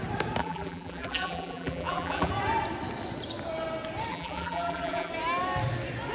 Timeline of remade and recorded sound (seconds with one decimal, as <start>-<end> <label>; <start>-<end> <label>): 0.0-0.4 recorded; 0.4-2.3 remade; 2.3-4.1 recorded; 4.1-5.1 remade; 5.1-6.1 recorded